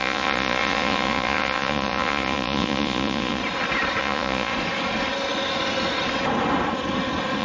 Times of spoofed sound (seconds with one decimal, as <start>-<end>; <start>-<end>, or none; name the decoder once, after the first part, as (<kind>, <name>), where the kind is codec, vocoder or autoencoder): 0.0-3.4 (vocoder, Vocos); 4.0-4.5